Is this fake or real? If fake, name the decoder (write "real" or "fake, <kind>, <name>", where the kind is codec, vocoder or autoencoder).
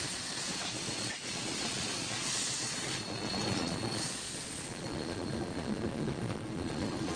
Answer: fake, vocoder, Vocos